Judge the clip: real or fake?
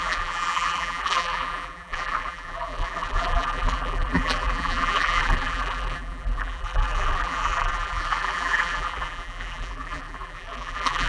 fake